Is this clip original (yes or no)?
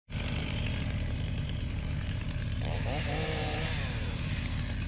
no